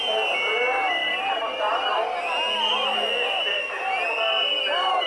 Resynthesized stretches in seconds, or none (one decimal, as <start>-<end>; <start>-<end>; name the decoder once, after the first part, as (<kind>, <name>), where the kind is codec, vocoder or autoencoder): none